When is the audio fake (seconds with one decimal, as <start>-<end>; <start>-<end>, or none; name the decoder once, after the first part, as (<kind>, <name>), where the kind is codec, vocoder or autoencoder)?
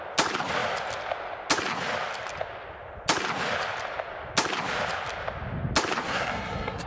6.0-6.9 (codec, SNAC)